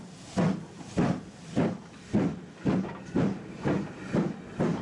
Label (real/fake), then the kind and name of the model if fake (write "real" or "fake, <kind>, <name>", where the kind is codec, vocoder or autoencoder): real